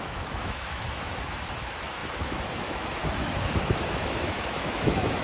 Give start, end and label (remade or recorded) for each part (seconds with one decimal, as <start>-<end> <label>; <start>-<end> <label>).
0.0-5.2 remade